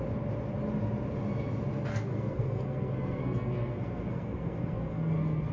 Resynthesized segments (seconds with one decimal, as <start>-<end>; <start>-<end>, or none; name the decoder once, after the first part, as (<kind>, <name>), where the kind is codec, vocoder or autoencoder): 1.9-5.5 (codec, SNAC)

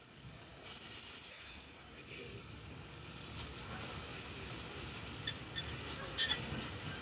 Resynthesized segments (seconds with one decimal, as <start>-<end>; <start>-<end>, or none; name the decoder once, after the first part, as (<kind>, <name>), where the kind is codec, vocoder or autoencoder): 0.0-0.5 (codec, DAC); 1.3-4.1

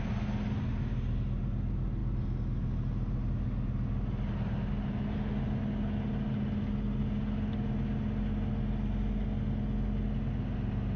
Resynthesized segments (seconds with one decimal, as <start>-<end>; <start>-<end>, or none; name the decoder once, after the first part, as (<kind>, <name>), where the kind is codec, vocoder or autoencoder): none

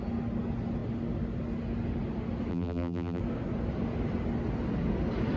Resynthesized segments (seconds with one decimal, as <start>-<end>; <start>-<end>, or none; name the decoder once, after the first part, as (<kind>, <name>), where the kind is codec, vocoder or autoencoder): 2.5-3.2 (vocoder, BigVGAN v2)

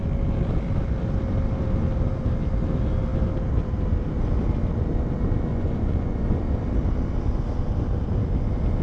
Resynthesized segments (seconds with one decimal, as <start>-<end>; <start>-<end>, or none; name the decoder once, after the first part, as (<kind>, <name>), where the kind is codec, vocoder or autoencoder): 5.5-6.6 (vocoder, Vocos)

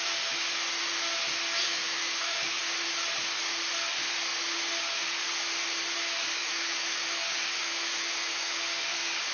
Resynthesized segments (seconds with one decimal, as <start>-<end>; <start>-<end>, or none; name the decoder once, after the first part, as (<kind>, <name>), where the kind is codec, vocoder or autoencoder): 1.5-2.6 (autoencoder, DAC-VAE); 6.4-8.6

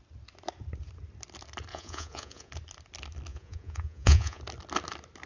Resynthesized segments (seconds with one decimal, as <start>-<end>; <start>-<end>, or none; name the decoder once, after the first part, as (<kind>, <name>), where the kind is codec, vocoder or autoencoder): 1.7-2.5 (vocoder, Vocos); 3.3-4.4

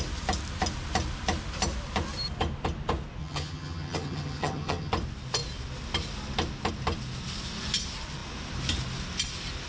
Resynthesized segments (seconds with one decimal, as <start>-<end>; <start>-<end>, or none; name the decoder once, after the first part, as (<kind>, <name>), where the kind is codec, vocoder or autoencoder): 3.2-4.9 (vocoder, HiFi-GAN)